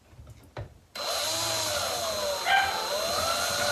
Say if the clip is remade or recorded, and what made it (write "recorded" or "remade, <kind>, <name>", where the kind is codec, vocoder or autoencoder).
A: recorded